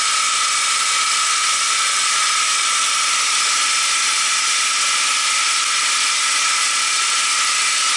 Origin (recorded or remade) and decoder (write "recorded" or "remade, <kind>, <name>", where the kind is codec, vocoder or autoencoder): recorded